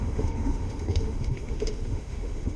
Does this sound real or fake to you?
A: fake